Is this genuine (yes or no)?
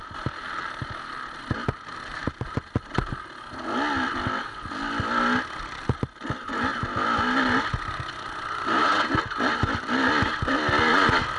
yes